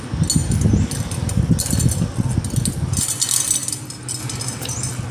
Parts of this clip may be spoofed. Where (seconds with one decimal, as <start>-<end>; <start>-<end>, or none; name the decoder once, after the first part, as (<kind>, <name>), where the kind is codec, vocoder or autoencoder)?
none